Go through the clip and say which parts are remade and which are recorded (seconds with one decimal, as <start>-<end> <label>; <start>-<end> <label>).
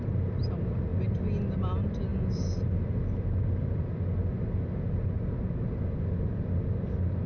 0.0-7.3 recorded